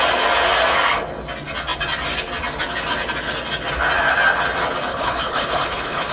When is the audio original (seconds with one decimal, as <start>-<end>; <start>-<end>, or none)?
0.0-4.9